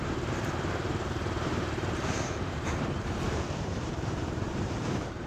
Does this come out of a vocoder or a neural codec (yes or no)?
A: yes